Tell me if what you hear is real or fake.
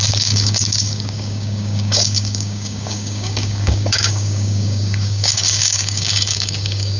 fake